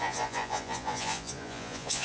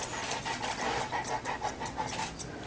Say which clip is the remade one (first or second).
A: first